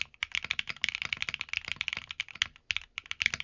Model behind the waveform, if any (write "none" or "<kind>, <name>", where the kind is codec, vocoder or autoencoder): none